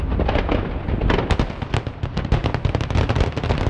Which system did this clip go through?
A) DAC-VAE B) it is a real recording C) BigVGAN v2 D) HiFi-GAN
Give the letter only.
B